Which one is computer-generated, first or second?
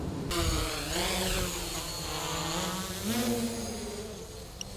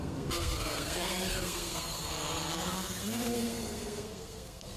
second